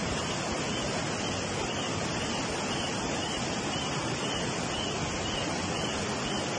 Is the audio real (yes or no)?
yes